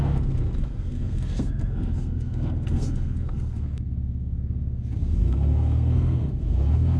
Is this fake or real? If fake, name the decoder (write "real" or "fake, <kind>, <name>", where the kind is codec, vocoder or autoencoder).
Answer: fake, codec, SNAC